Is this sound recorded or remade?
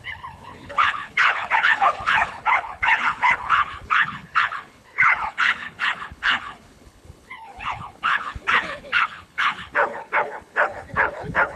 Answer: remade